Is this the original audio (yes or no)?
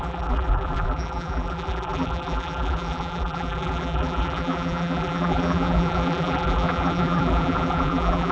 no